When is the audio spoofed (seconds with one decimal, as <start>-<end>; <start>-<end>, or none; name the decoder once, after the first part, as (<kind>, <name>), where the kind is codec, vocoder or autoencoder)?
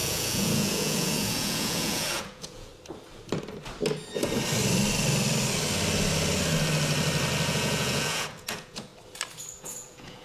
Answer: 0.0-2.7 (vocoder, Vocos); 7.5-8.9; 9.6-10.2